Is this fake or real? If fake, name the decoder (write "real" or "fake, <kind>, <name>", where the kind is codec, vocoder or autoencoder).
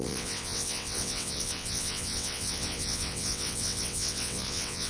fake, vocoder, WaveNeXt